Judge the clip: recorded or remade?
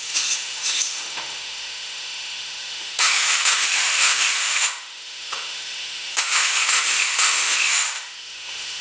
remade